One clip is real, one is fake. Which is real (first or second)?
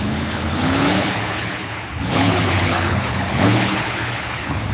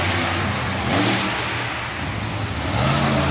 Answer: second